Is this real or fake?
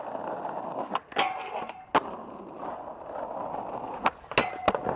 real